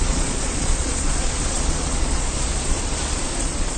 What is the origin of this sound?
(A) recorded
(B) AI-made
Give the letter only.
B